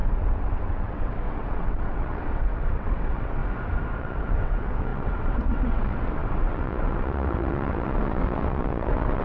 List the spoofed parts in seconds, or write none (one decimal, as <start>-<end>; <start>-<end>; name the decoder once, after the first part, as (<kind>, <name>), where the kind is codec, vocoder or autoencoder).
0.0-3.4 (vocoder, WaveNeXt); 4.0-9.2